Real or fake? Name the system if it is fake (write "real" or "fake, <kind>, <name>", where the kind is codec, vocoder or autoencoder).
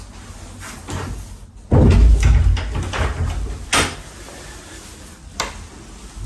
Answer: real